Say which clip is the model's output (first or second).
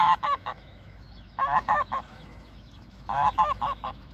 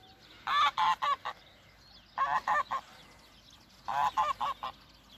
first